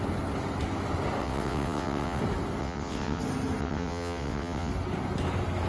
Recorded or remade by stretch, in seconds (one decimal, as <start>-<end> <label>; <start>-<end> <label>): 0.0-1.2 recorded; 1.2-2.2 remade; 2.2-2.6 recorded; 2.6-3.2 remade; 3.2-3.6 recorded; 3.6-4.7 remade; 4.7-5.7 recorded